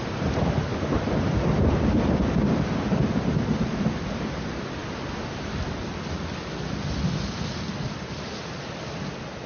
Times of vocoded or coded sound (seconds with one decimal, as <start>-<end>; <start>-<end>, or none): none